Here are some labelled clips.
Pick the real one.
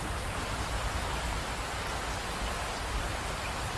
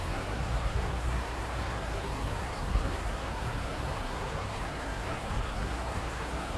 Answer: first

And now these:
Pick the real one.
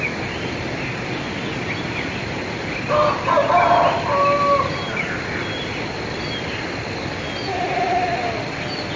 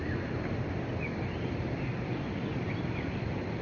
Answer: first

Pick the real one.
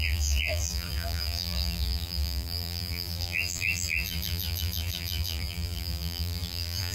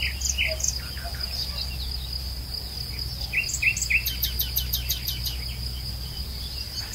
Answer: second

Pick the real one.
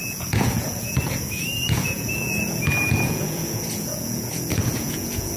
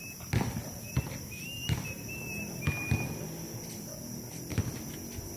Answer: second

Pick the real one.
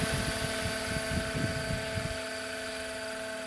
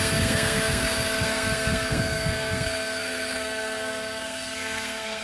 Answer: first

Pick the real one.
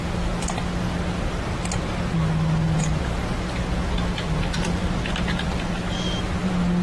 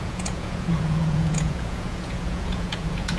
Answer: first